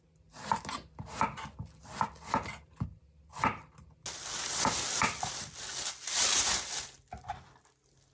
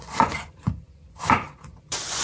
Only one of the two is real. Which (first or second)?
first